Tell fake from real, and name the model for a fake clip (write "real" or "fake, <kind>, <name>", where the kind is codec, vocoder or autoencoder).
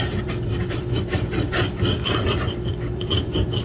fake, vocoder, BigVGAN v2